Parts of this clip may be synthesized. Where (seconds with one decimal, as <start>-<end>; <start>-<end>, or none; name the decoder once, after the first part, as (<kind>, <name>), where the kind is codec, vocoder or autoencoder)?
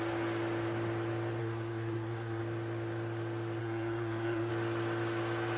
1.4-2.4 (codec, SNAC); 3.6-4.5